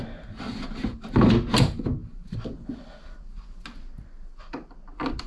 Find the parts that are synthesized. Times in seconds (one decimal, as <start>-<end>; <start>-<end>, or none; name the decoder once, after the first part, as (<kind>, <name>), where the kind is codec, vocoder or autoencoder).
none